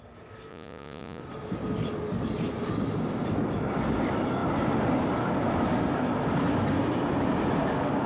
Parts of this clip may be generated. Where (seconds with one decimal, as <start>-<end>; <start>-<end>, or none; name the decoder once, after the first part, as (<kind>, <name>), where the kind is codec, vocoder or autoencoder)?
0.5-1.2 (vocoder, Vocos)